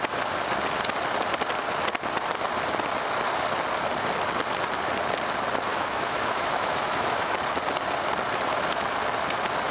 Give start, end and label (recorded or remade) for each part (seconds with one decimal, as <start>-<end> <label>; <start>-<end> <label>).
0.0-5.7 recorded; 5.7-7.3 remade; 7.3-9.7 recorded